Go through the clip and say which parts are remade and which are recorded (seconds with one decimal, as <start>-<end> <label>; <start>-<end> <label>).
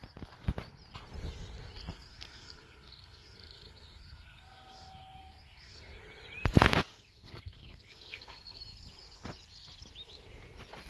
0.0-1.9 recorded; 1.9-6.0 remade; 6.0-6.9 recorded; 6.9-8.6 remade; 8.6-10.9 recorded